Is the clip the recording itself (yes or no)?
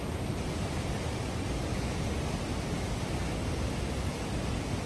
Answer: yes